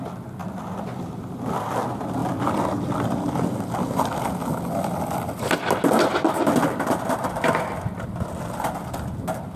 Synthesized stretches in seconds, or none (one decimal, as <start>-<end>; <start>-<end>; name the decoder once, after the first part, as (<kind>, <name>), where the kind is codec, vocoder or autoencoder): none